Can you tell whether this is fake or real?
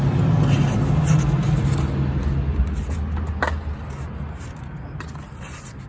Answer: real